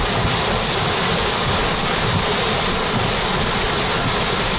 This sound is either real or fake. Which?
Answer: real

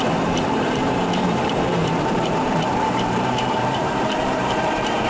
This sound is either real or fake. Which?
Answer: fake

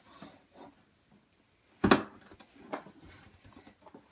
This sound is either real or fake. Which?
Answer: real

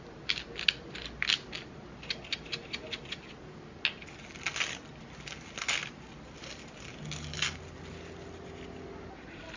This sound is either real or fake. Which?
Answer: real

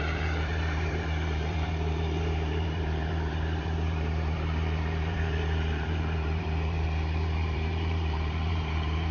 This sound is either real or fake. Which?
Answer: fake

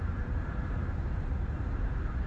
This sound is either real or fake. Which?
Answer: fake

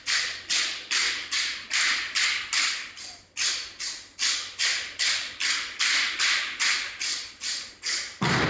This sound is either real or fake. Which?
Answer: real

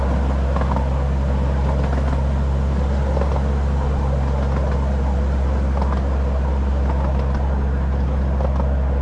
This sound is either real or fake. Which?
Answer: real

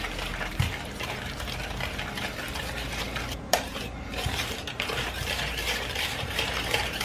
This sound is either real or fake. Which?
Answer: fake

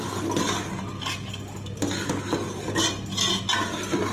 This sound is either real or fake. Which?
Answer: real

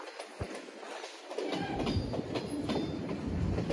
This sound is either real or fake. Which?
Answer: real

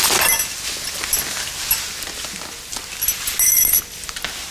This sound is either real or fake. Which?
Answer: real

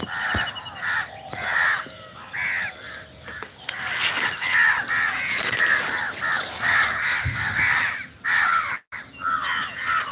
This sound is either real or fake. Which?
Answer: real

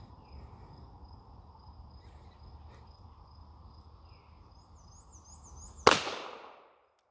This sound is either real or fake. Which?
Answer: real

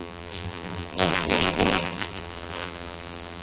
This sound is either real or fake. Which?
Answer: fake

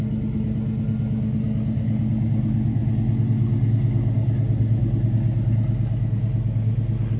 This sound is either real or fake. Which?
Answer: real